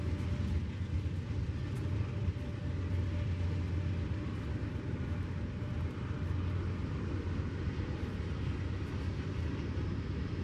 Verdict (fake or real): real